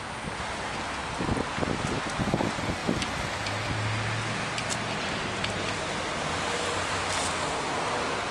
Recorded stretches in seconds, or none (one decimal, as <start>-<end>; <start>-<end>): 0.0-8.3